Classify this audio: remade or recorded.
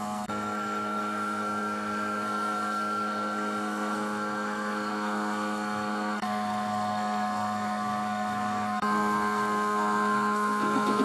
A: remade